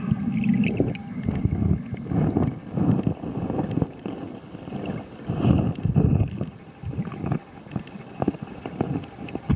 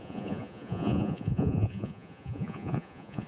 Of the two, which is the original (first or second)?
first